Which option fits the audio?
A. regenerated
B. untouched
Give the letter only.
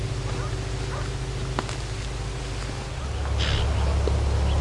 B